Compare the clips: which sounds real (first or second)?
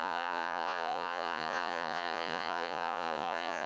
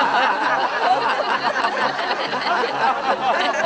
second